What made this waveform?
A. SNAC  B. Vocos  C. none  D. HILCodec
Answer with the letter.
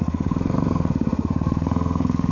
A